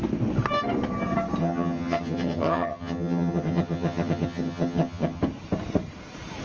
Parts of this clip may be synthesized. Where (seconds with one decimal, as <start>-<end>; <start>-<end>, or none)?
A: 1.4-5.2